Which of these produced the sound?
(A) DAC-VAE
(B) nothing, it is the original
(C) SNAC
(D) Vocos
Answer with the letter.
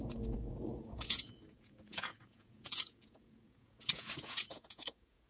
D